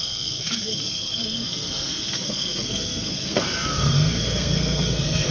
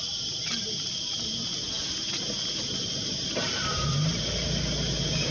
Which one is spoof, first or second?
first